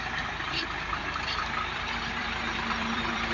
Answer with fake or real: fake